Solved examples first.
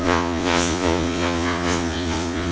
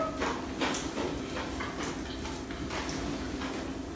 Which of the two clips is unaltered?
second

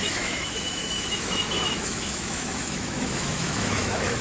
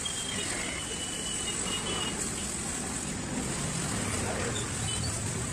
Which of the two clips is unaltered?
second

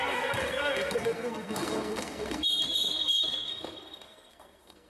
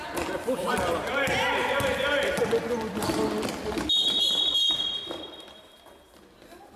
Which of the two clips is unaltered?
second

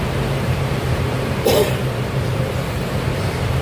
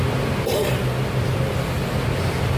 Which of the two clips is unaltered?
second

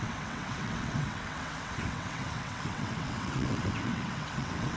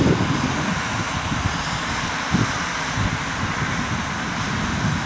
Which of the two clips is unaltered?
second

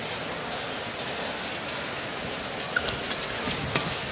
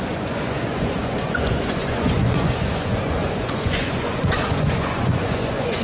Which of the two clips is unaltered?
first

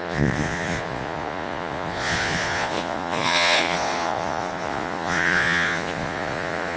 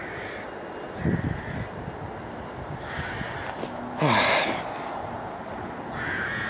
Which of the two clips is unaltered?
second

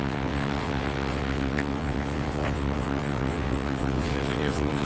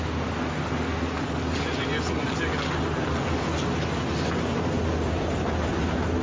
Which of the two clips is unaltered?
second